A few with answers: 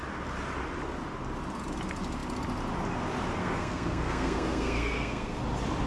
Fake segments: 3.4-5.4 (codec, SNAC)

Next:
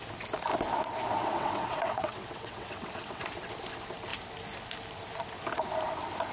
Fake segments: 1.2-3.2 (vocoder, WaveNeXt)

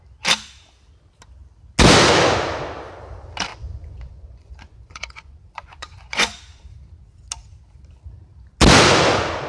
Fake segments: 3.5-6.6 (vocoder, Vocos)

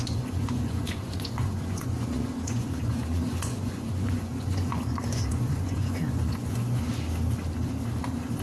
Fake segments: 0.0-6.9 (vocoder, Vocos)

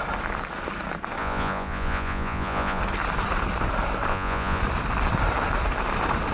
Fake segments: 1.2-2.8 (vocoder, Vocos); 4.1-4.6

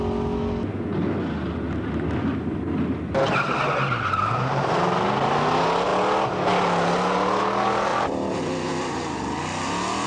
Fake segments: 7.9-8.7 (vocoder, BigVGAN v2)

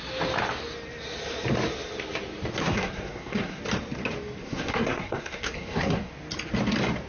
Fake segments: 2.6-3.6 (codec, SNAC); 4.4-6.1

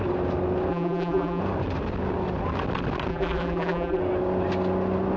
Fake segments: 0.7-1.4 (vocoder, BigVGAN v2); 3.1-4.0